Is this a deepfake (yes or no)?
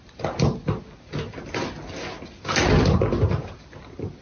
no